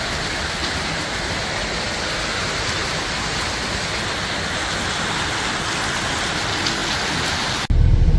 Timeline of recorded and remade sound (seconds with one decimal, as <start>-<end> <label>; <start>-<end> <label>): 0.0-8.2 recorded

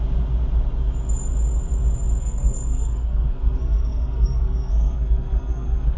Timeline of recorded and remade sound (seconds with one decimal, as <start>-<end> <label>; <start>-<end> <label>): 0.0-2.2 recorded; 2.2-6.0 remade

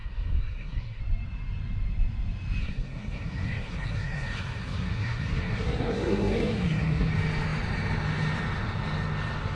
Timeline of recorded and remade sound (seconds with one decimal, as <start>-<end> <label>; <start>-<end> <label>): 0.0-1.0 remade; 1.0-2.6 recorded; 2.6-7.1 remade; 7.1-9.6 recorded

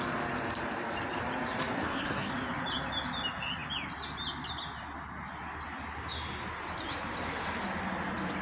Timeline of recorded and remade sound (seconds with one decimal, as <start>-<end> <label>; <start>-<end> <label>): 0.0-1.7 recorded; 1.7-2.3 remade; 2.3-8.4 recorded

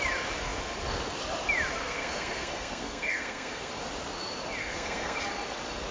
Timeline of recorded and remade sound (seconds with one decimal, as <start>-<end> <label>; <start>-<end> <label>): 0.0-1.8 recorded; 1.8-3.7 remade; 3.7-4.6 recorded; 4.6-5.2 remade; 5.2-5.9 recorded

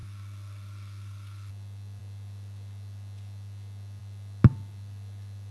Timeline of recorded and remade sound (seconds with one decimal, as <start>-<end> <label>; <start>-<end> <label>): 0.0-1.5 remade; 1.5-5.5 recorded

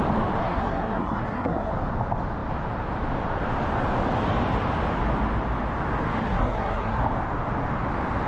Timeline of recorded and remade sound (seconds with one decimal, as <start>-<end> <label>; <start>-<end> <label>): 0.0-0.4 recorded; 0.4-1.7 remade; 1.7-6.2 recorded; 6.2-7.0 remade; 7.0-8.3 recorded